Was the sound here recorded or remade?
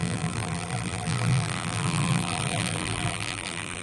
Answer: remade